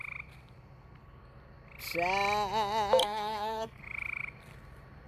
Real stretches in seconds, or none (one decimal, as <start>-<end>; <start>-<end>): 0.0-3.0; 3.8-5.1